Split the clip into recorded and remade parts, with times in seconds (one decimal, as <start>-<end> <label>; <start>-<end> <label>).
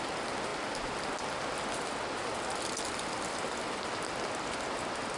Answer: 0.0-5.2 recorded